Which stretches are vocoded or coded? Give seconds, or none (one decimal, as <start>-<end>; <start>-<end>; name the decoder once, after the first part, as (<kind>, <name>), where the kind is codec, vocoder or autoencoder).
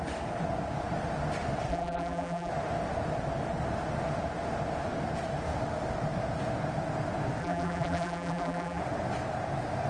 1.7-2.5 (vocoder, BigVGAN v2); 7.4-8.8